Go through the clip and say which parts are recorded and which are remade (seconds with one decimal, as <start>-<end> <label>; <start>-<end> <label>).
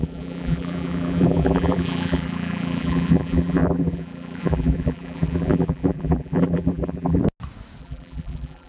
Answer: 0.0-7.2 remade; 7.2-7.8 recorded; 7.8-8.7 remade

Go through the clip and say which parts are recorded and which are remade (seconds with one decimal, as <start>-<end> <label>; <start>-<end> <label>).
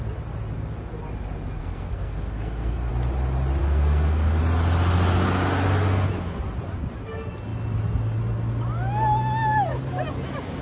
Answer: 0.0-1.6 recorded; 1.6-2.9 remade; 2.9-3.6 recorded; 3.6-4.4 remade; 4.4-10.6 recorded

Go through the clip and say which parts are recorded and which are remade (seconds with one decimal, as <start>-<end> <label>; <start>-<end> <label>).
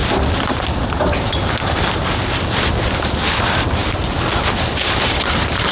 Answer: 0.0-5.7 recorded